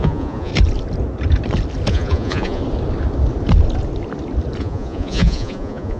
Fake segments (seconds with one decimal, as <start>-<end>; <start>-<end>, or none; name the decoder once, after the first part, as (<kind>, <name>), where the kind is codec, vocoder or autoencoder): 0.0-0.5 (vocoder, Vocos); 1.9-2.6; 4.6-6.0